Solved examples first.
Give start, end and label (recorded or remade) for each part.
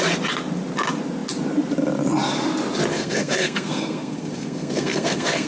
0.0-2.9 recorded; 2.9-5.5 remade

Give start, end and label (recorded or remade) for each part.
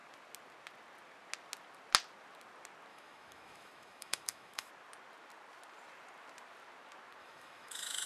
0.0-2.9 recorded; 2.9-4.7 remade; 4.7-7.2 recorded; 7.2-8.1 remade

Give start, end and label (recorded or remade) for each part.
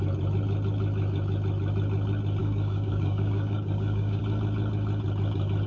0.0-2.4 recorded; 2.4-4.2 remade; 4.2-5.7 recorded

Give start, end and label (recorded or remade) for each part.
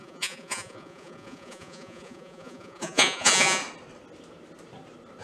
0.0-3.6 remade; 3.6-5.2 recorded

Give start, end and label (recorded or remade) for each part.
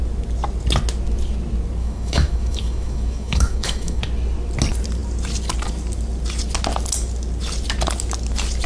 0.0-1.8 recorded; 1.8-4.0 remade; 4.0-8.7 recorded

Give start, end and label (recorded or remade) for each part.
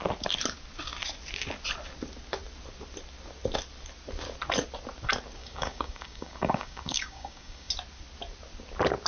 0.0-5.4 recorded; 5.4-7.7 remade; 7.7-9.1 recorded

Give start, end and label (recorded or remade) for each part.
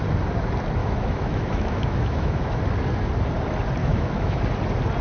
0.0-0.8 recorded; 0.8-2.6 remade; 2.6-3.8 recorded; 3.8-4.4 remade; 4.4-5.0 recorded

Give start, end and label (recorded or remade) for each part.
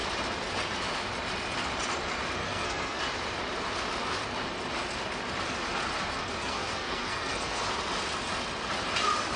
0.0-2.4 recorded; 2.4-3.0 remade; 3.0-6.4 recorded; 6.4-7.6 remade; 7.6-9.4 recorded